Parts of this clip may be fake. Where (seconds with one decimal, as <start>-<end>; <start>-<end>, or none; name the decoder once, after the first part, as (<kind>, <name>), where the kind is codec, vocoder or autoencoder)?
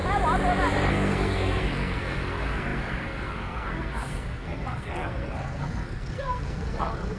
0.9-7.2 (codec, SNAC)